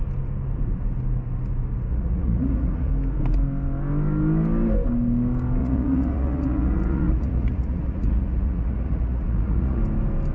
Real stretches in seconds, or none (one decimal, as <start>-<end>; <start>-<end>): 0.0-1.9; 2.9-5.6; 9.8-10.3

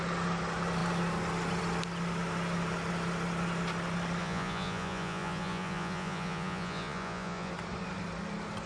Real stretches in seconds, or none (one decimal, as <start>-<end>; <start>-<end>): 0.0-4.2; 7.5-8.7

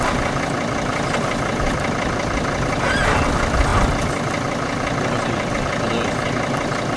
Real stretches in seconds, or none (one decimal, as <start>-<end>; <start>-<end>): 0.0-7.0

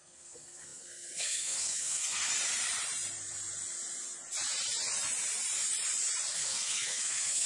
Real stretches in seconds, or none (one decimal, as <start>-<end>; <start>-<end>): 2.3-6.3

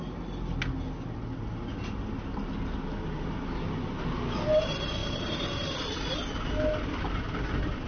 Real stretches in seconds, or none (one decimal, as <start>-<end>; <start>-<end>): 0.0-7.9

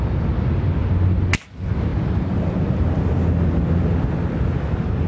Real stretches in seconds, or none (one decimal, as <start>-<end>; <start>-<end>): 0.0-5.1